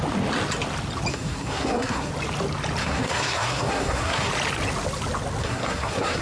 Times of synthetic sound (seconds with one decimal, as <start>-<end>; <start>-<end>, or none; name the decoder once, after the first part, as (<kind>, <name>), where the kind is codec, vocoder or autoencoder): 1.1-2.1 (codec, SNAC); 2.8-4.3; 5.4-6.2